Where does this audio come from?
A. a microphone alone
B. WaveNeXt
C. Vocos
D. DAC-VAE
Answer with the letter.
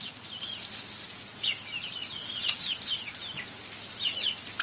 A